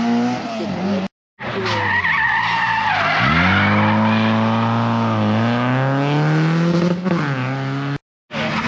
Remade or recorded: recorded